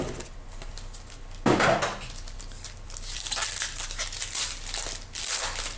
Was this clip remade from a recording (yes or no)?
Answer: no